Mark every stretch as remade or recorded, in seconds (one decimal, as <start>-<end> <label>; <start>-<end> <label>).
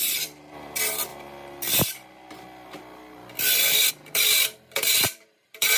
0.0-5.8 remade